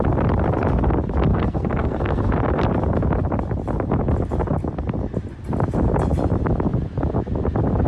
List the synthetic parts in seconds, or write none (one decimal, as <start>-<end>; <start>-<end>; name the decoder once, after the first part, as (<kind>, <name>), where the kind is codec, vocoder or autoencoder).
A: 1.3-2.3 (codec, SNAC)